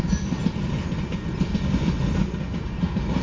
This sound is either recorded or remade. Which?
recorded